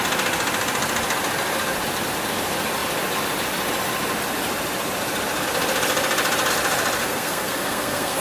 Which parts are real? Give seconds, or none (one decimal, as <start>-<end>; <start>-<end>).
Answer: 0.0-7.0